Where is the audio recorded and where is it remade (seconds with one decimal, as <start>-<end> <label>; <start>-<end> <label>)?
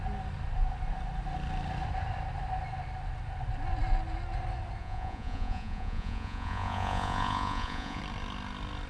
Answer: 0.0-4.8 recorded; 4.8-8.0 remade; 8.0-8.9 recorded